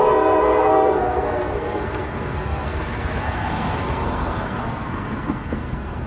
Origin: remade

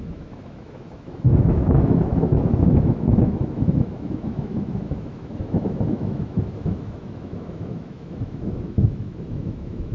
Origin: remade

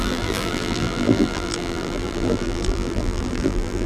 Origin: remade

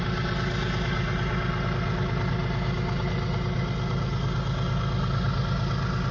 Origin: recorded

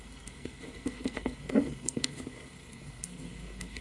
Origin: remade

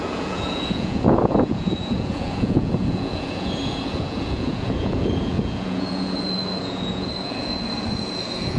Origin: remade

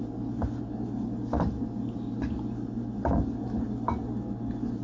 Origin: recorded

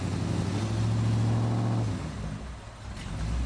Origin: recorded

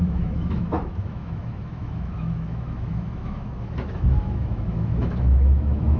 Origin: remade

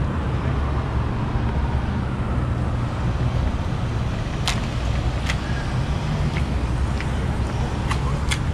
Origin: recorded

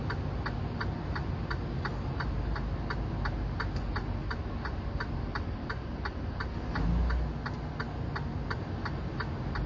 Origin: recorded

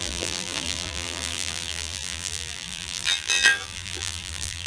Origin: remade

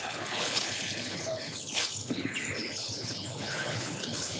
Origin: remade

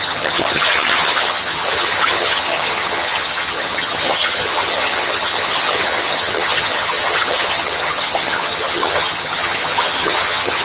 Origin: remade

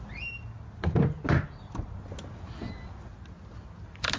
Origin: recorded